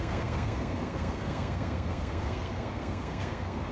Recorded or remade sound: remade